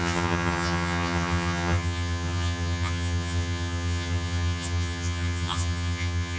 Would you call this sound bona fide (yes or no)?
no